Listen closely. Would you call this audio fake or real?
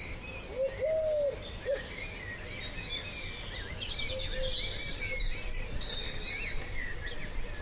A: real